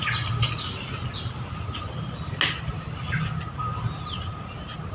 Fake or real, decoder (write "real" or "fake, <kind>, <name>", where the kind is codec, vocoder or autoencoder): real